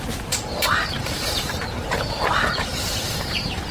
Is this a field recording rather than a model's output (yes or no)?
no